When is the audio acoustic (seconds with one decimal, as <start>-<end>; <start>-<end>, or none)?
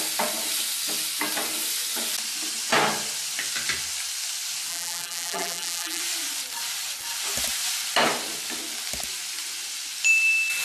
0.0-4.7; 6.0-10.6